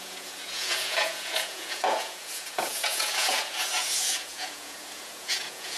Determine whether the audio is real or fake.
fake